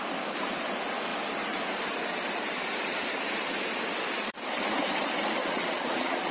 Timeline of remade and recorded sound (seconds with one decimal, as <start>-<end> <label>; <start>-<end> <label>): 0.0-5.4 recorded; 5.4-6.3 remade

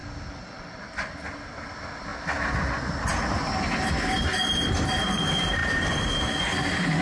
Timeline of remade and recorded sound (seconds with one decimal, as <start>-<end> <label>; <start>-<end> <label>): 0.0-7.0 recorded